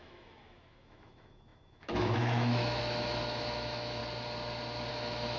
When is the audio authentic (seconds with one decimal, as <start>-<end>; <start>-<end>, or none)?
4.0-4.9